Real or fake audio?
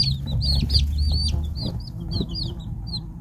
real